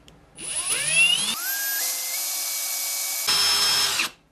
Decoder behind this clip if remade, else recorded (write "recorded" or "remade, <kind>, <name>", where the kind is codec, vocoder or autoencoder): recorded